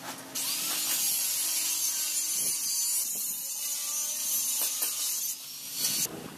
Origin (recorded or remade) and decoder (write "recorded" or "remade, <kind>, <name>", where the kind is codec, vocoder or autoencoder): recorded